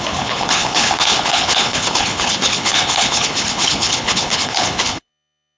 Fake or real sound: fake